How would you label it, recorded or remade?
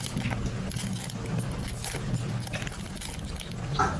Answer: recorded